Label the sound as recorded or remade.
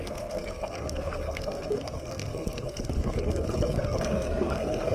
remade